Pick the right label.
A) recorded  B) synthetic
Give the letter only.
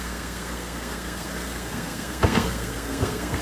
B